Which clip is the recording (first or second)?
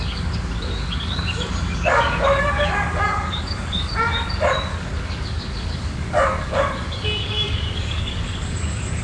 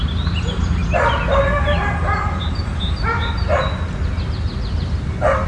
second